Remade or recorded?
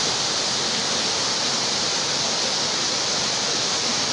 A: recorded